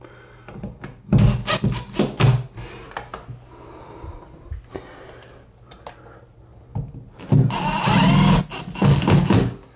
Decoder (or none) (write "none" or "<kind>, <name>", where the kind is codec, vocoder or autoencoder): none